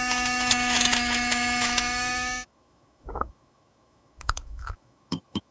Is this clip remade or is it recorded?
remade